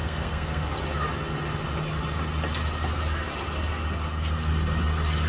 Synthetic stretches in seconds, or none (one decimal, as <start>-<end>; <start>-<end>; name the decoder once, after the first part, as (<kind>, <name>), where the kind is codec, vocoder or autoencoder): 0.0-0.7 (codec, SNAC)